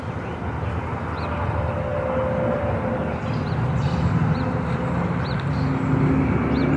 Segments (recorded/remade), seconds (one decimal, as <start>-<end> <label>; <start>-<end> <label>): 0.0-6.8 recorded